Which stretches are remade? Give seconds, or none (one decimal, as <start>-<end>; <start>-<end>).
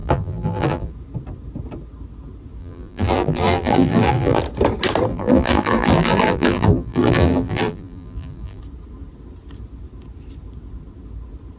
0.0-0.9; 2.6-4.4; 5.1-8.6